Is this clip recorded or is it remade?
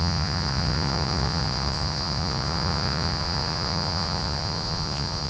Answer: remade